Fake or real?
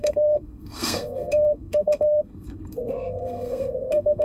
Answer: fake